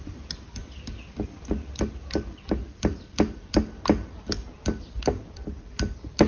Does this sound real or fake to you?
real